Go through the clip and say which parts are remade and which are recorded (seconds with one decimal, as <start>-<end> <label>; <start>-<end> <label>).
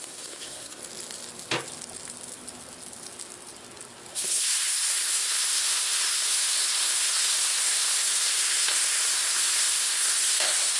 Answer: 0.0-0.8 remade; 0.8-4.1 recorded; 4.1-10.8 remade